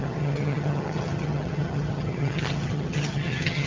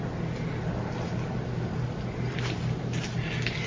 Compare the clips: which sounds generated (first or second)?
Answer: first